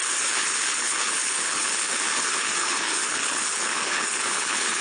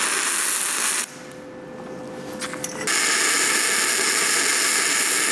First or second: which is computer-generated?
first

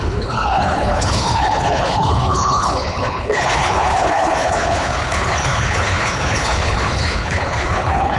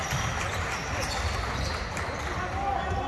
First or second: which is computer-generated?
first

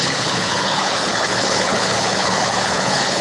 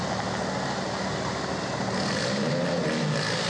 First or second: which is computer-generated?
first